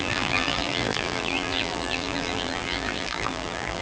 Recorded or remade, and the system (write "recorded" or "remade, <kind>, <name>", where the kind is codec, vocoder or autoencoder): remade, vocoder, BigVGAN v2